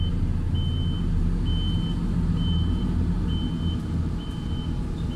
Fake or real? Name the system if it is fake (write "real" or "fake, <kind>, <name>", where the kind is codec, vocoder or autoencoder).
real